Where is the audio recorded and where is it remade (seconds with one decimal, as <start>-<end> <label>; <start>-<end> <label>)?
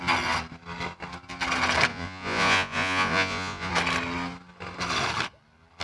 0.0-1.9 recorded; 1.9-3.7 remade; 3.7-5.8 recorded